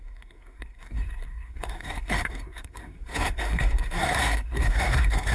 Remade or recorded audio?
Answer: remade